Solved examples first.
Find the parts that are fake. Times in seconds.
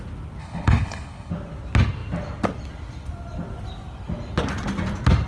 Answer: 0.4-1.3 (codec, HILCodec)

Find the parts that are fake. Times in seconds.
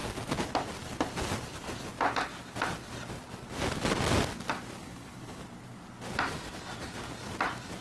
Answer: 4.8-5.4 (codec, HILCodec)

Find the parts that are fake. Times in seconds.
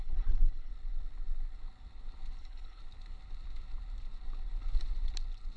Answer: 0.0-0.7 (codec, HILCodec); 2.4-2.8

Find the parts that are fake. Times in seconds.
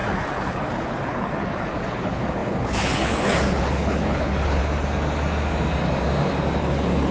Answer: 0.0-4.6 (codec, HILCodec); 6.6-7.1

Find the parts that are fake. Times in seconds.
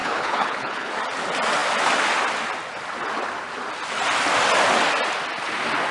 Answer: 0.0-0.9 (codec, HILCodec)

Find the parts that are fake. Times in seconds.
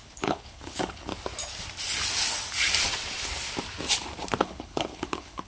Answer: 0.0-1.1 (codec, HILCodec); 4.4-5.5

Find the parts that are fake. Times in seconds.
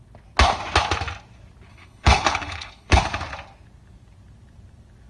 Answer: 1.7-3.0 (codec, HILCodec)